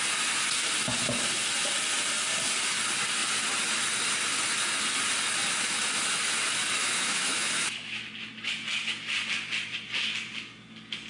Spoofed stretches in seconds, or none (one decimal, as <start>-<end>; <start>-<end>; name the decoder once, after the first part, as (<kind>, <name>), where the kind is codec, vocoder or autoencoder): 6.8-8.0 (autoencoder, DAC-VAE)